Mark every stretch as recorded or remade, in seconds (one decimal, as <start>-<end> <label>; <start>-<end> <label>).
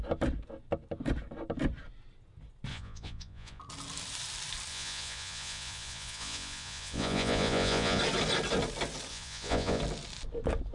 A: 0.0-2.7 recorded; 2.7-3.6 remade; 3.6-4.7 recorded; 4.7-8.0 remade; 8.0-9.1 recorded; 9.1-9.8 remade; 9.8-10.7 recorded